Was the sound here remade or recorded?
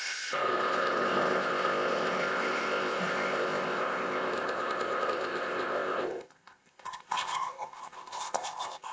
remade